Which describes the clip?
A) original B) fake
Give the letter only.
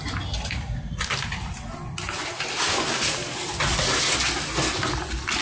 A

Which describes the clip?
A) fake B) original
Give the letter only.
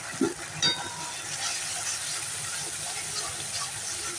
B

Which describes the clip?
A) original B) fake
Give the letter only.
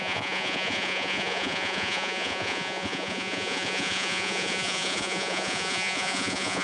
B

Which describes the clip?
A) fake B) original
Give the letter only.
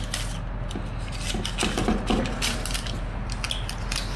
B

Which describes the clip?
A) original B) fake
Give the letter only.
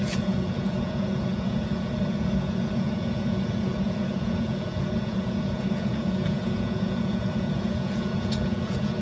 B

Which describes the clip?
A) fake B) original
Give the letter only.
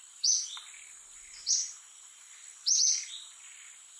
B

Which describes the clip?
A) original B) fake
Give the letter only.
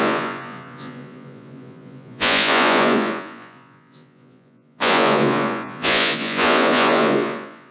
B